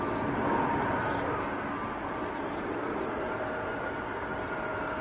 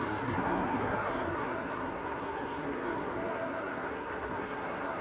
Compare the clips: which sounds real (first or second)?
first